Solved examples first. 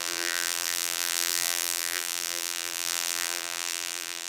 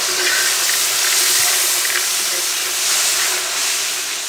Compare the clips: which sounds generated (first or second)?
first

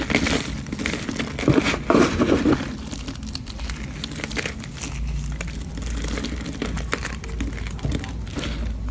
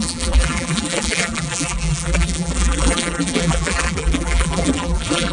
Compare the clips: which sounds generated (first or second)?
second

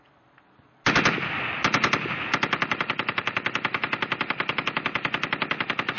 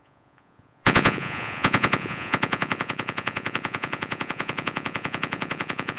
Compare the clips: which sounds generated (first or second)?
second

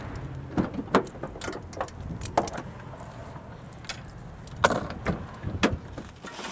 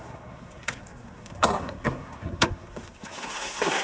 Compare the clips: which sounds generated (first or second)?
second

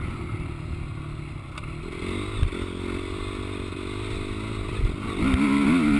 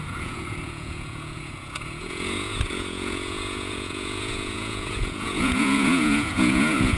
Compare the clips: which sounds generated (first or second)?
second